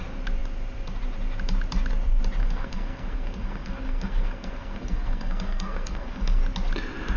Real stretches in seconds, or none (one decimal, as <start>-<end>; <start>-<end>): 0.0-2.4; 6.4-7.2